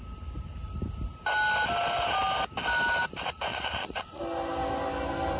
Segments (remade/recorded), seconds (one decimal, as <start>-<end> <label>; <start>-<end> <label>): 0.0-3.5 recorded; 3.5-4.2 remade; 4.2-5.4 recorded